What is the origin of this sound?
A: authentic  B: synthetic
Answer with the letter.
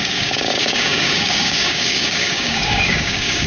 B